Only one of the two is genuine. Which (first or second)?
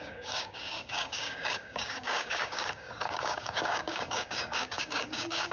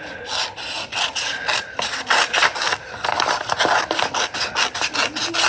second